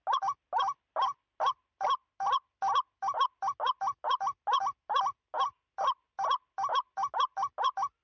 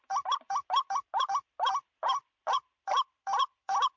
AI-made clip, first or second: second